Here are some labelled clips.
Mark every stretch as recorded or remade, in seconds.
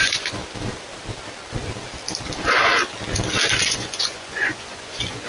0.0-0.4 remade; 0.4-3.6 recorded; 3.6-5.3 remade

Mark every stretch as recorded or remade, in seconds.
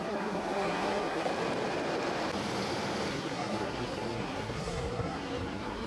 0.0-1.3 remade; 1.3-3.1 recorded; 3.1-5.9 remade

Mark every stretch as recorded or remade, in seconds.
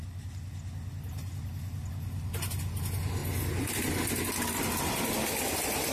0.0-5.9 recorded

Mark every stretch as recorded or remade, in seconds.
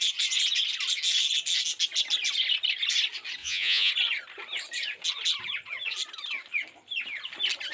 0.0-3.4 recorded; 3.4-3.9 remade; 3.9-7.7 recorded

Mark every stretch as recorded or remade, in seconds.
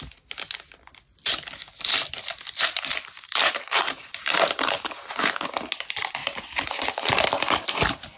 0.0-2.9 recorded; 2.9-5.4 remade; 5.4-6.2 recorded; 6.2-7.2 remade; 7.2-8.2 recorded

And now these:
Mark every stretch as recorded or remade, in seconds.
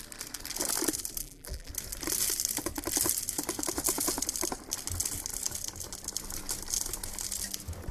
0.0-1.2 recorded; 1.2-1.7 remade; 1.7-7.9 recorded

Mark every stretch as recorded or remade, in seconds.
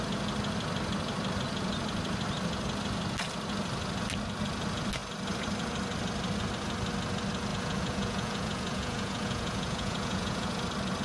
0.0-7.5 recorded; 7.5-10.6 remade; 10.6-11.0 recorded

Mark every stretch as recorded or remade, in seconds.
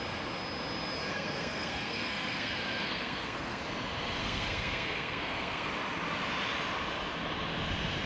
0.0-1.1 recorded; 1.1-3.6 remade; 3.6-4.2 recorded; 4.2-5.7 remade; 5.7-8.1 recorded